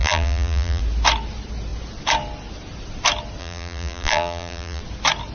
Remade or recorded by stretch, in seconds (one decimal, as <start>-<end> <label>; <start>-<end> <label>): 0.0-0.8 remade; 0.8-3.4 recorded; 3.4-4.8 remade; 4.8-5.3 recorded